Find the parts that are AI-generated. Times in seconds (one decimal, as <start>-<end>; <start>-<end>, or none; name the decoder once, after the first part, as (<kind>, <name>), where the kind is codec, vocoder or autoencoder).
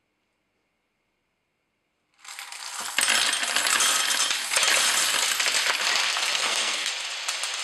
6.0-6.9 (codec, SNAC)